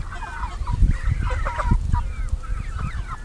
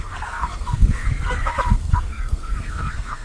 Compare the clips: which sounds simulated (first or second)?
second